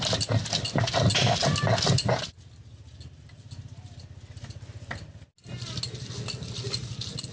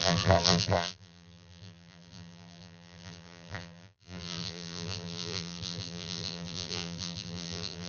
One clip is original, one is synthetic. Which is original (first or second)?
first